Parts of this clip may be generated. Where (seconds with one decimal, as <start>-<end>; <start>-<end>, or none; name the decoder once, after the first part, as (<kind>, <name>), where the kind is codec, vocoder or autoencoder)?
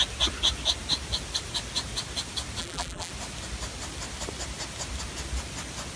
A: 2.6-3.1 (vocoder, BigVGAN v2)